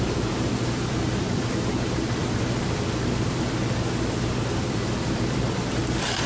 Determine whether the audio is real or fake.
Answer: fake